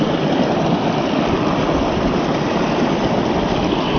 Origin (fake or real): real